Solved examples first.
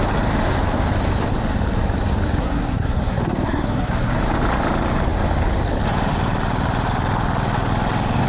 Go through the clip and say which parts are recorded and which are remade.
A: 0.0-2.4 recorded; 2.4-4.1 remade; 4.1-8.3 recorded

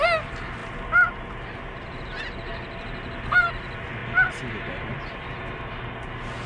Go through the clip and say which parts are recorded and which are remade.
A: 0.0-6.5 recorded

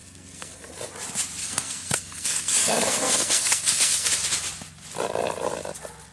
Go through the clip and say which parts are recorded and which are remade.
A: 0.0-0.7 remade; 0.7-1.4 recorded; 1.4-4.1 remade; 4.1-6.1 recorded